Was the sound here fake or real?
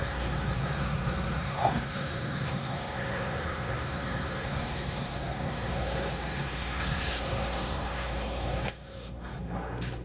fake